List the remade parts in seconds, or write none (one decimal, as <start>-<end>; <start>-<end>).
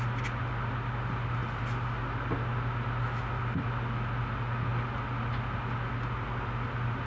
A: none